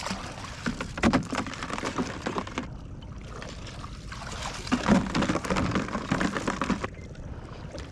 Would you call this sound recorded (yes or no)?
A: yes